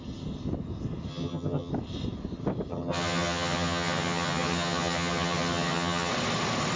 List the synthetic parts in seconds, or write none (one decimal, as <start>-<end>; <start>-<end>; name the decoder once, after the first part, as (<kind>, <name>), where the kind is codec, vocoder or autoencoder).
1.1-1.7 (vocoder, HiFi-GAN); 2.7-6.1